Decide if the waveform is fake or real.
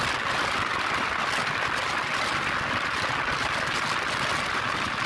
real